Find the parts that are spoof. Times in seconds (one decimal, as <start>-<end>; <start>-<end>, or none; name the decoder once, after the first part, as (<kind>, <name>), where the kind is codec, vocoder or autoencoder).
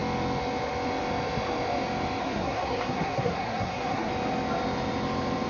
2.2-4.1 (codec, SNAC)